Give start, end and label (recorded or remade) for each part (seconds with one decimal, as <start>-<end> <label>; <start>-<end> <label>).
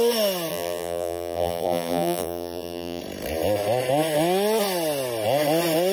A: 0.0-0.5 recorded; 0.5-3.0 remade; 3.0-5.9 recorded